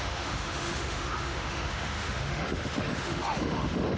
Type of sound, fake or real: fake